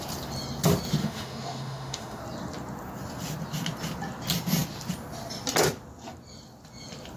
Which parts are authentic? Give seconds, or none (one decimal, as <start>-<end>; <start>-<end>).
0.0-1.0; 2.2-7.2